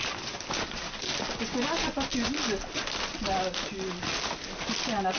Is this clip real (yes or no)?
yes